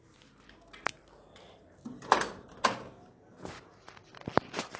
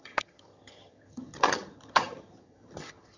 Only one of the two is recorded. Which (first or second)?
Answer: first